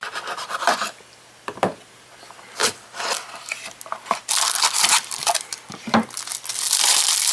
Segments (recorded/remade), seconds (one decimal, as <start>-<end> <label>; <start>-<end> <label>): 0.0-7.3 recorded

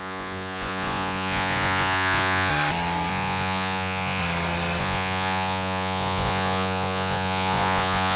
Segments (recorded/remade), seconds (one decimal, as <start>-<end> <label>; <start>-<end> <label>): 0.0-2.5 remade; 2.5-3.1 recorded; 3.1-4.2 remade; 4.2-4.8 recorded; 4.8-8.2 remade

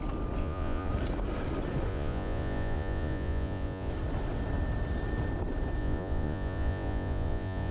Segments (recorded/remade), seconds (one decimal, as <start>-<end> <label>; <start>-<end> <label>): 0.0-0.4 recorded; 0.4-0.9 remade; 0.9-1.9 recorded; 1.9-3.9 remade; 3.9-5.8 recorded; 5.8-7.7 remade